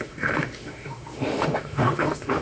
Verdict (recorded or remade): remade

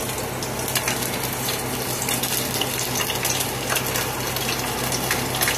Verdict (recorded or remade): recorded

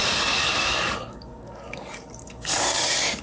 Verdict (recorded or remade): remade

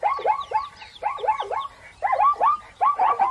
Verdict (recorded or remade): remade